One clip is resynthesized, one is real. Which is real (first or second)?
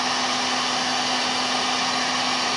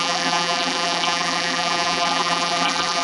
first